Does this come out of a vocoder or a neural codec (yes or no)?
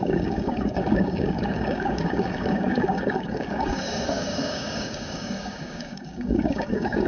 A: yes